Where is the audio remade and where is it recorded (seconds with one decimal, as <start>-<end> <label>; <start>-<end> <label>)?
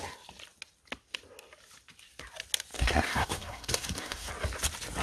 0.0-2.7 recorded; 2.7-4.3 remade; 4.3-5.0 recorded